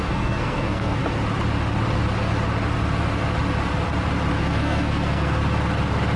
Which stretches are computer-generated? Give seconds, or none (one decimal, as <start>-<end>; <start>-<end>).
0.0-1.0; 4.4-5.4